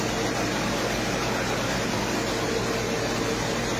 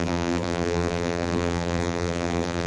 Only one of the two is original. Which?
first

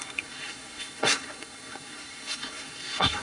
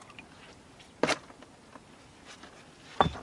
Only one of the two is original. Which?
second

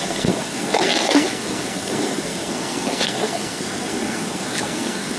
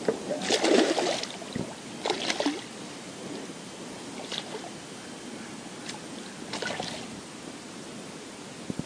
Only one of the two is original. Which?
second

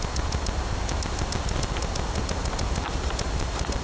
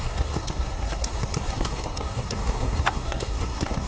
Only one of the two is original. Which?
first